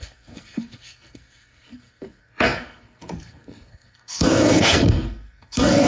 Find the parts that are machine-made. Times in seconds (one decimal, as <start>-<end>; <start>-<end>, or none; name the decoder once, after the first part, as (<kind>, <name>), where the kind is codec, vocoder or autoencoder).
0.0-5.9 (codec, SNAC)